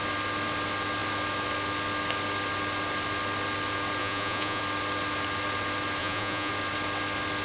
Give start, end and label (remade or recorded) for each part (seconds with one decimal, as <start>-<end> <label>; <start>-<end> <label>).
0.0-4.0 recorded; 4.0-4.6 remade; 4.6-6.0 recorded; 6.0-6.5 remade; 6.5-7.4 recorded

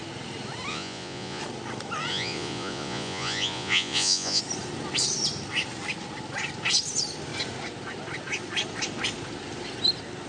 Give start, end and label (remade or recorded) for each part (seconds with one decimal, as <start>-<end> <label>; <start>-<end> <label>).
0.0-0.7 recorded; 0.7-1.4 remade; 1.4-2.1 recorded; 2.1-4.4 remade; 4.4-10.3 recorded

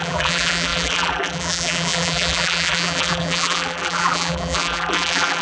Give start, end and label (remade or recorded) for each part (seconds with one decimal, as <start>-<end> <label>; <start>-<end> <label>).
0.0-5.4 remade

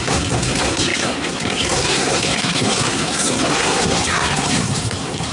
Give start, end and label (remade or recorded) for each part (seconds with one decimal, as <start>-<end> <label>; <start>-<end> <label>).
0.0-5.3 remade

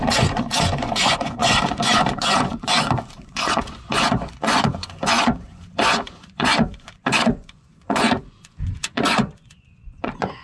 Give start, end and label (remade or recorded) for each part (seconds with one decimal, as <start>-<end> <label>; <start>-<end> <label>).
0.0-10.4 remade

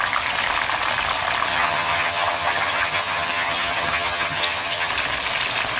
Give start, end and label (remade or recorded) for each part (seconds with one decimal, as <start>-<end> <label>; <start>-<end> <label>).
0.0-1.5 recorded; 1.5-4.9 remade; 4.9-5.8 recorded

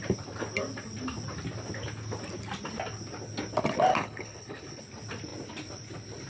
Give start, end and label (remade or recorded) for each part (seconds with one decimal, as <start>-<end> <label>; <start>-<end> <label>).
0.0-3.9 recorded; 3.9-4.8 remade; 4.8-6.3 recorded

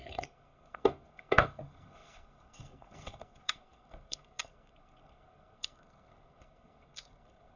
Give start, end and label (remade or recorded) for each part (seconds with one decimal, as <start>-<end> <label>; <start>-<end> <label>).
0.0-7.6 remade